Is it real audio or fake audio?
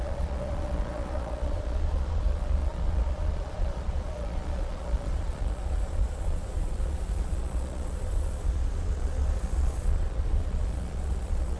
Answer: fake